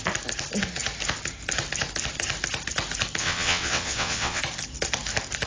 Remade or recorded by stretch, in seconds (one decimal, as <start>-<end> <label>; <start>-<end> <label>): 0.0-3.2 recorded; 3.2-4.4 remade; 4.4-5.5 recorded